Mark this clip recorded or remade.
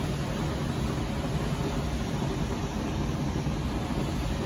recorded